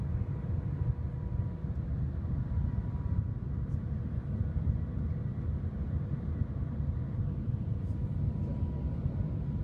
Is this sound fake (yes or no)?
no